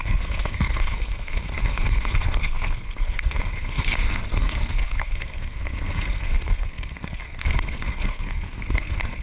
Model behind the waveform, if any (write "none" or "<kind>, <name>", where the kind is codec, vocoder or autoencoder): codec, SNAC